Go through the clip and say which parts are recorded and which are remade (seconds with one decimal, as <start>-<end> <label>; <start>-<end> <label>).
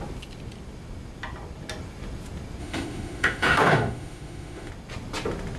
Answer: 0.0-2.6 recorded; 2.6-4.7 remade; 4.7-5.6 recorded